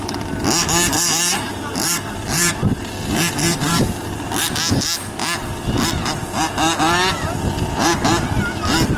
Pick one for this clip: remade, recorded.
recorded